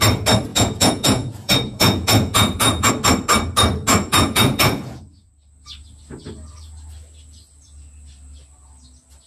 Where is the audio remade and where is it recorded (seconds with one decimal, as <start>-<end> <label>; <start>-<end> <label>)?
0.0-0.5 recorded; 0.5-2.9 remade; 2.9-4.1 recorded; 4.1-5.3 remade; 5.3-9.3 recorded

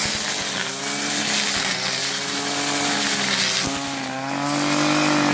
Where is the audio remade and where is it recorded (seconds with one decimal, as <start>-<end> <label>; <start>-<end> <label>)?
0.0-5.3 recorded

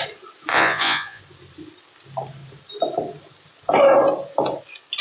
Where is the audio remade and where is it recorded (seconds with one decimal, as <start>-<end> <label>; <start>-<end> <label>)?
0.0-0.5 recorded; 0.5-1.2 remade; 1.2-5.0 recorded

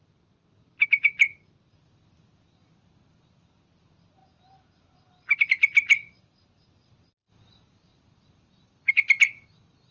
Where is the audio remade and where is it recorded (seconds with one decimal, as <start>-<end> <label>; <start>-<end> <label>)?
0.0-9.9 recorded

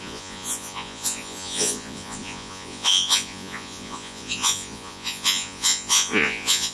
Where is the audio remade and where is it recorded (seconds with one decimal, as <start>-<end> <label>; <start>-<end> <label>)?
0.0-6.7 remade

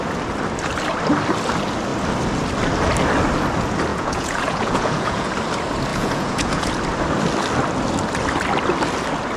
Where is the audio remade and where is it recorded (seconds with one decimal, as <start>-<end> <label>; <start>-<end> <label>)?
0.0-3.9 recorded; 3.9-5.3 remade; 5.3-5.9 recorded; 5.9-6.7 remade; 6.7-9.4 recorded

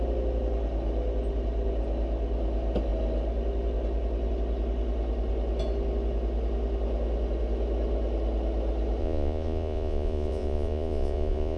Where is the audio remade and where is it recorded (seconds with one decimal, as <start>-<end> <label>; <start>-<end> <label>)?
0.0-9.0 recorded; 9.0-11.6 remade

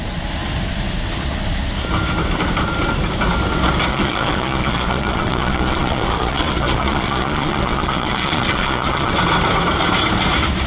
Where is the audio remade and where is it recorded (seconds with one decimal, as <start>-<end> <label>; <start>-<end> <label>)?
0.0-3.9 recorded; 3.9-9.1 remade; 9.1-10.7 recorded